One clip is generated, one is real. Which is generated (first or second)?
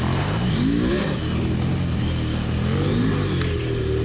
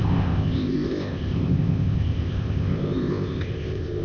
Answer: second